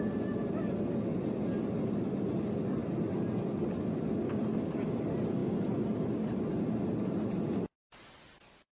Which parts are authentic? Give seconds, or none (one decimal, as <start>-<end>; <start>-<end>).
0.0-8.7

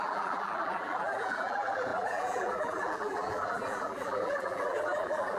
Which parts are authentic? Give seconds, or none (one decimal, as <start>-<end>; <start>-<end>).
none